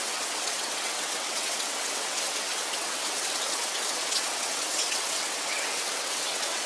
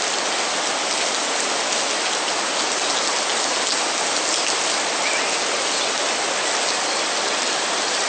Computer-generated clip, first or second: first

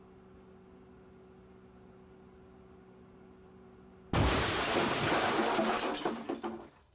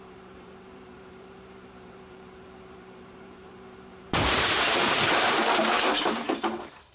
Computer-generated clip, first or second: second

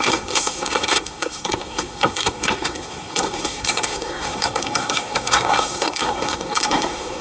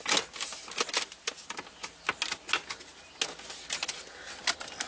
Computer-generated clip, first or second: first